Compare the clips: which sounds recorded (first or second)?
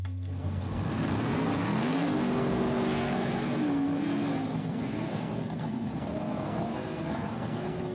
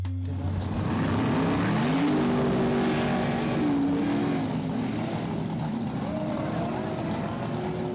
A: second